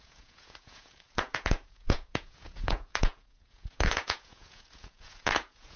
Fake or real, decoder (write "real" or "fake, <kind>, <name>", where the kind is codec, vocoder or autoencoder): fake, vocoder, Vocos